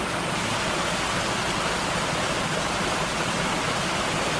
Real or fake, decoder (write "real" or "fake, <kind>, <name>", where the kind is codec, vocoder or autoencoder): real